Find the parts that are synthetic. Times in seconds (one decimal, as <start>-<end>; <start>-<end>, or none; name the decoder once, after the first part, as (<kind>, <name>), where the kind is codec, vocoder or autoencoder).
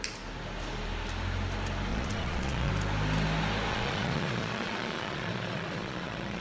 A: 1.9-2.7 (vocoder, Vocos); 3.7-6.4